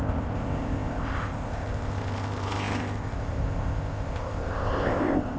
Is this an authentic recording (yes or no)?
no